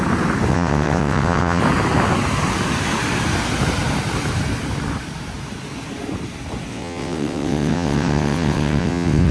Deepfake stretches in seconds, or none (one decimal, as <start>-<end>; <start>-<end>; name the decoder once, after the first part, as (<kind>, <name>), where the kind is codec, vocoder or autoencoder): 0.5-1.6 (vocoder, WaveNeXt); 6.7-9.3